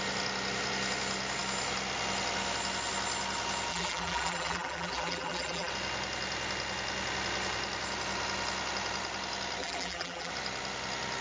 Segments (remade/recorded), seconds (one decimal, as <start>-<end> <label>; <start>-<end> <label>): 0.0-3.7 recorded; 3.7-5.7 remade; 5.7-9.6 recorded; 9.6-10.3 remade; 10.3-11.2 recorded